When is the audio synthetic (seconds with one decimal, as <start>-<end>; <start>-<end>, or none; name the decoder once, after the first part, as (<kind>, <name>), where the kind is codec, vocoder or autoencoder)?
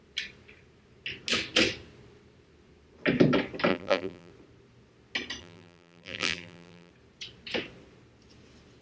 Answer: 3.7-4.3 (vocoder, BigVGAN v2); 5.4-6.9